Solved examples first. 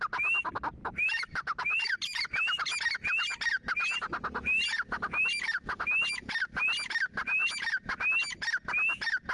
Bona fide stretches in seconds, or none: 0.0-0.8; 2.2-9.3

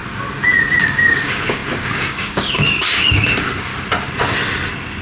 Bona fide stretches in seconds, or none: 0.0-0.8; 3.7-5.0

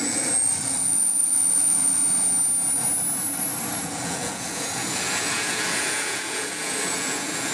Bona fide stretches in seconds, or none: 2.0-3.8

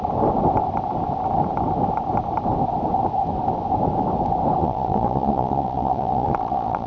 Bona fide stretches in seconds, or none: 0.0-4.6

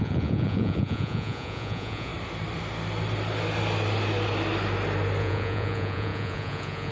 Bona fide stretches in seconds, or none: 2.1-5.2

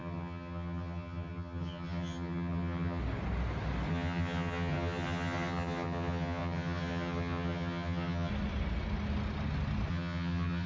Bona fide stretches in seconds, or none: 3.0-3.9; 8.3-9.9

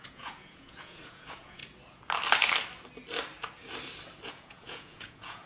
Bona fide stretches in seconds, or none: 1.6-4.3

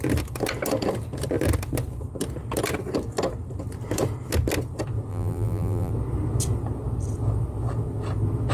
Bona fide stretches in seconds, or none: 0.0-5.1; 5.9-8.5